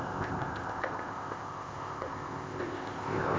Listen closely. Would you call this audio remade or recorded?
remade